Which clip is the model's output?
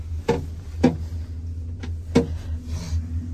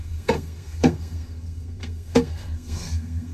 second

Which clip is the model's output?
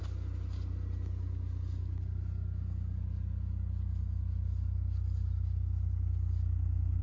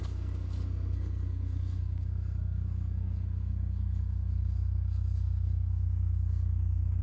second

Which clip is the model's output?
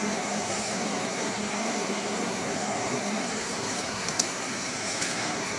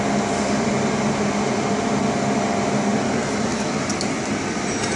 first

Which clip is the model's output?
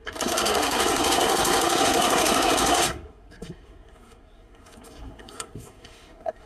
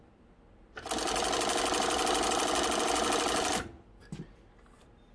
first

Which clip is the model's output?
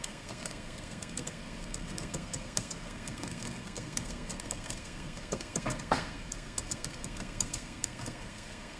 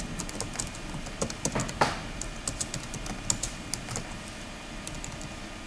first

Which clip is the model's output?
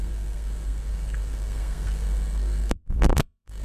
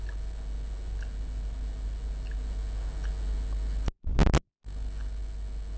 first